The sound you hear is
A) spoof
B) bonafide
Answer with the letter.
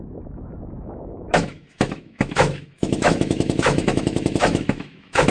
A